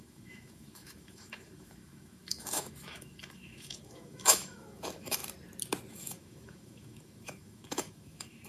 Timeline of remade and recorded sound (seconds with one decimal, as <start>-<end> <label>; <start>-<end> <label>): 0.0-5.2 remade; 5.2-5.9 recorded; 5.9-8.5 remade